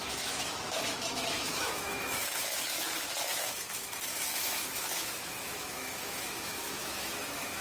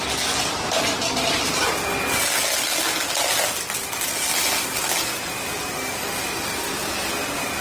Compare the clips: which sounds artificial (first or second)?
first